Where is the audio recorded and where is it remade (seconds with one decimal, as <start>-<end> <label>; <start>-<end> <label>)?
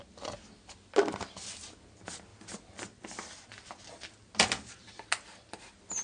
0.0-6.0 recorded